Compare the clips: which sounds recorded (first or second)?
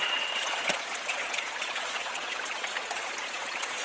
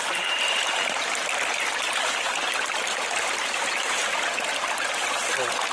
second